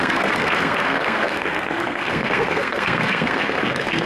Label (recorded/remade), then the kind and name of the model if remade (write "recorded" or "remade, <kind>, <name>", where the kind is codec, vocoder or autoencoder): remade, codec, SNAC